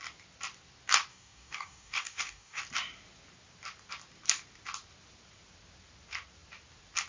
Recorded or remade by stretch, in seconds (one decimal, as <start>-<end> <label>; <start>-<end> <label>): 0.0-1.1 recorded; 1.1-2.6 remade; 2.6-7.1 recorded